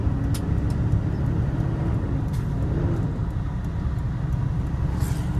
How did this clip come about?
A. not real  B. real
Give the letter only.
B